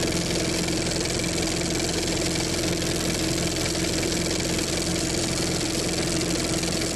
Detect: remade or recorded recorded